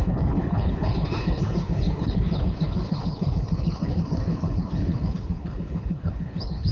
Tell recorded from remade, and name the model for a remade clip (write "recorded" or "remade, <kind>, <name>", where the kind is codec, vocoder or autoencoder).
remade, codec, HILCodec